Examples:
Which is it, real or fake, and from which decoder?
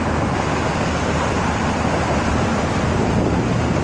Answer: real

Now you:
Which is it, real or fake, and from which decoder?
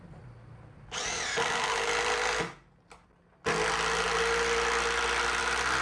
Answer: real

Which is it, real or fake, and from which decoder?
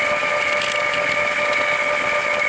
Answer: real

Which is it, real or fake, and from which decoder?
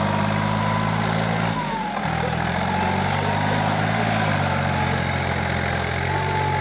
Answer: real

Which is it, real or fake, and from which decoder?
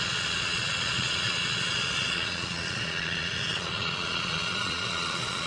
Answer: fake, vocoder, Vocos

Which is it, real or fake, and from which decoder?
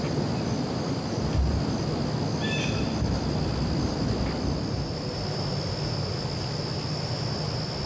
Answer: real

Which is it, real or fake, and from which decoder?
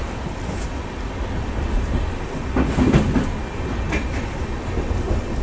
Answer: real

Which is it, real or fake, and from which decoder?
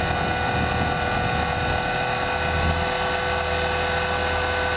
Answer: real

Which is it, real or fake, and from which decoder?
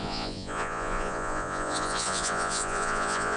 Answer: fake, vocoder, Vocos